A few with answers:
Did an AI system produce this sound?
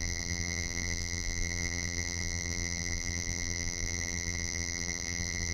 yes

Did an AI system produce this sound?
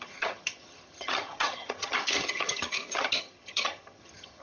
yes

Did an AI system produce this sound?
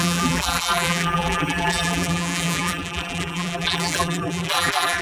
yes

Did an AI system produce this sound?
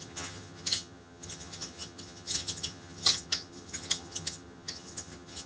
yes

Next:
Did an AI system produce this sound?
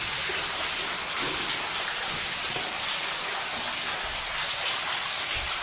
no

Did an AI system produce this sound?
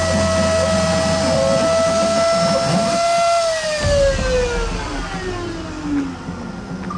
no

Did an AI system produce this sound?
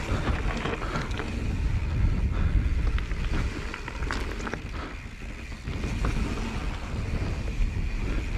no